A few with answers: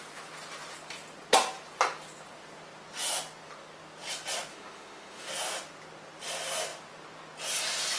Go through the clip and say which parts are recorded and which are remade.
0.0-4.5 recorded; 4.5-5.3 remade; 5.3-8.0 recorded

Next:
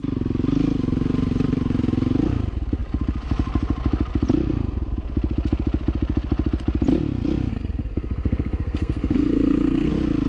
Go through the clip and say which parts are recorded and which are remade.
0.0-7.5 recorded; 7.5-9.9 remade; 9.9-10.3 recorded

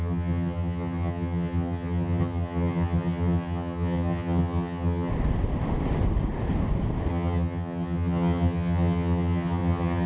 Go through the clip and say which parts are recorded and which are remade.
0.0-5.1 remade; 5.1-7.1 recorded; 7.1-10.1 remade

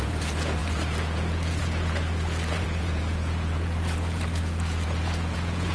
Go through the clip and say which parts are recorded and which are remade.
0.0-5.7 remade

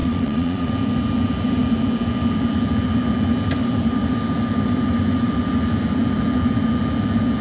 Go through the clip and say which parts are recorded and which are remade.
0.0-0.7 remade; 0.7-7.4 recorded

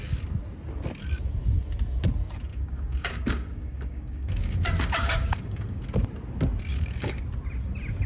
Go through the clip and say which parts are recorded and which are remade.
0.0-2.5 recorded; 2.5-5.8 remade; 5.8-6.7 recorded; 6.7-7.2 remade; 7.2-8.1 recorded